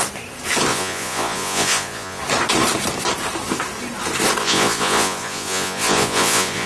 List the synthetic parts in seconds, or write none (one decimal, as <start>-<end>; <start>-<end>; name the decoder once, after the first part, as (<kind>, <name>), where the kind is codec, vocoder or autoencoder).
0.7-2.2 (vocoder, Vocos); 4.4-6.7